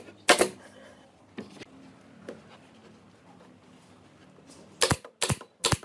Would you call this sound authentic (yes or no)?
yes